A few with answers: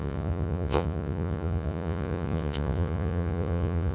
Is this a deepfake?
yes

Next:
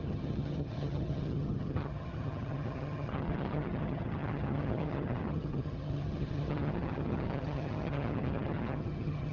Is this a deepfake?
yes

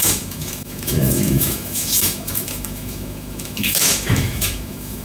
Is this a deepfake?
yes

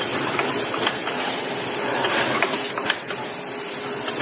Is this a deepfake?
no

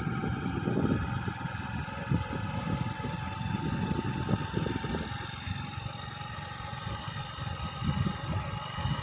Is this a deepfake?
yes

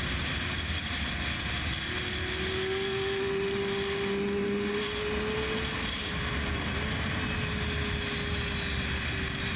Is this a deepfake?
no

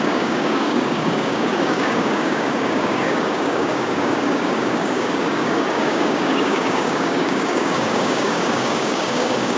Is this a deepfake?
yes